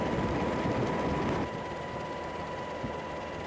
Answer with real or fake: real